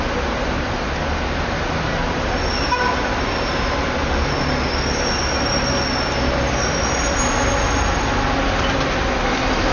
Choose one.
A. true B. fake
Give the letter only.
A